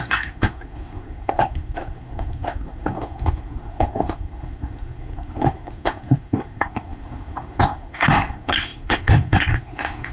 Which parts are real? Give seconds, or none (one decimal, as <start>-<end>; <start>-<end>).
none